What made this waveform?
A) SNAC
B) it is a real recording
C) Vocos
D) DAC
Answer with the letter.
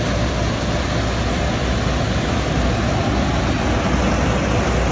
B